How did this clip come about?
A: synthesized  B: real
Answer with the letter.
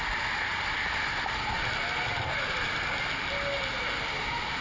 B